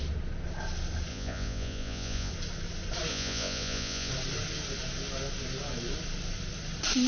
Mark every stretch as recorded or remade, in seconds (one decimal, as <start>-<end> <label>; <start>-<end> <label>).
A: 0.0-1.1 recorded; 1.1-2.3 remade; 2.3-3.1 recorded; 3.1-4.1 remade; 4.1-7.1 recorded